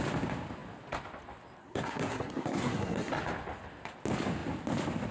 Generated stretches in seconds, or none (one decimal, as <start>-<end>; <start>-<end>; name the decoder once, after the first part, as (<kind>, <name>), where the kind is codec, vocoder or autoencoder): 1.6-3.2 (codec, SNAC)